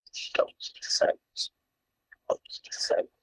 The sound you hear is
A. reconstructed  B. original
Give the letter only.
A